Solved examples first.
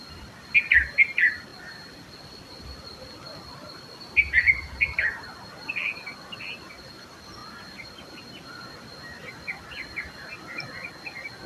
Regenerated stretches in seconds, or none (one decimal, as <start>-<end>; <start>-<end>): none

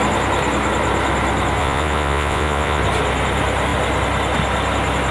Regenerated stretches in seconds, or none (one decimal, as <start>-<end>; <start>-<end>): 1.6-2.8

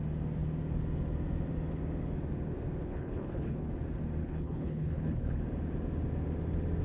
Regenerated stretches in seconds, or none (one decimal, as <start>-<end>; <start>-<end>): 2.8-3.7; 4.2-5.4

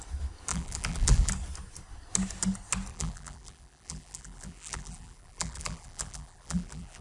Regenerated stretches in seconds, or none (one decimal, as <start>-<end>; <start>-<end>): 0.5-1.3; 2.9-7.0

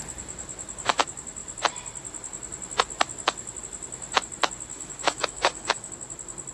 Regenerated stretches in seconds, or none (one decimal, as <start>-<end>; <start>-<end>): 4.7-5.9

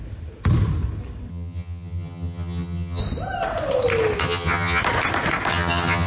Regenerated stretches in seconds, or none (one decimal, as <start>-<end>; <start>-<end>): 1.3-3.0; 4.2-4.8; 5.5-6.1